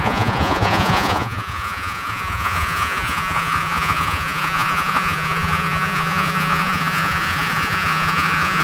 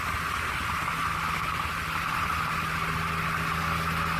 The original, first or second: second